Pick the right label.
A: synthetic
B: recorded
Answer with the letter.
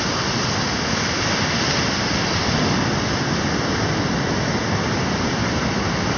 B